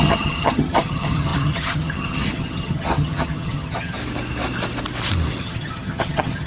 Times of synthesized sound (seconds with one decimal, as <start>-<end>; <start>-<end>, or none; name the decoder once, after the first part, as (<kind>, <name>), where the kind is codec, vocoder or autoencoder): 0.0-4.0 (vocoder, HiFi-GAN); 5.4-6.5